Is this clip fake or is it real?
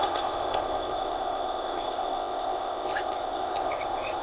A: fake